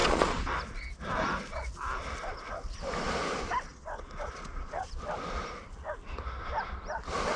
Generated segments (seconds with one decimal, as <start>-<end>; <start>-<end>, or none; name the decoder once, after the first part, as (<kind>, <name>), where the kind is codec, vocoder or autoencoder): 0.0-0.5 (vocoder, Vocos); 3.7-4.9